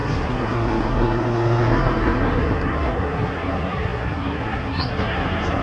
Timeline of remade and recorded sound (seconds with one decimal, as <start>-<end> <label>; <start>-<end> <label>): 0.0-5.6 remade